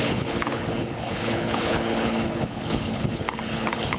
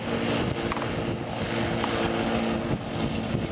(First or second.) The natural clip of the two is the second